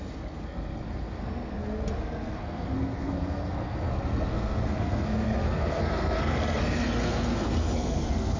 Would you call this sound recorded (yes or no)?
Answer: no